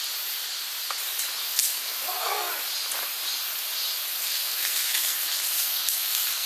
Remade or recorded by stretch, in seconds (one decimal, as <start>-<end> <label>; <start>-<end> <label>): 0.0-1.5 recorded; 1.5-2.5 remade; 2.5-4.1 recorded; 4.1-6.5 remade